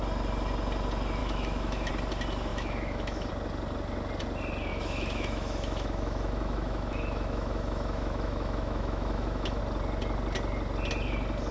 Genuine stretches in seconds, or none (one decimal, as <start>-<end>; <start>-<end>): 0.0-1.2; 1.9-2.5; 3.3-4.7; 9.6-11.5